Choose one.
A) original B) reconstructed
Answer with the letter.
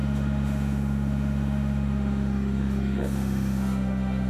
B